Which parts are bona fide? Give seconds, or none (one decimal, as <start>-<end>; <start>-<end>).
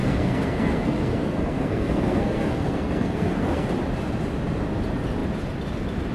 3.7-6.1